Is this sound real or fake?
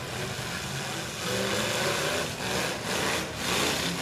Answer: real